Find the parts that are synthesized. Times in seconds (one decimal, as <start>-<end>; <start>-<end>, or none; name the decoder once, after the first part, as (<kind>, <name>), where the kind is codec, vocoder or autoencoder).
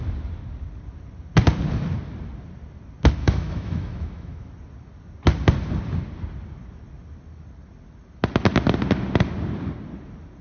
3.2-4.5 (autoencoder, DAC-VAE)